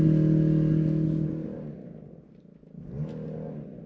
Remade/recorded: recorded